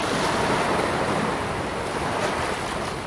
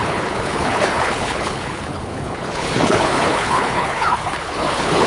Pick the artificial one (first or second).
second